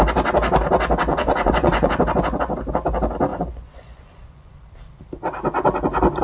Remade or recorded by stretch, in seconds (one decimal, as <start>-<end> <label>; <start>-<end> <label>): 0.0-1.1 recorded; 1.1-1.9 remade; 1.9-3.3 recorded; 3.3-4.5 remade; 4.5-6.2 recorded